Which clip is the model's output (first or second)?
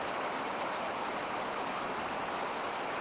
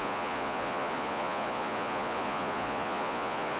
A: second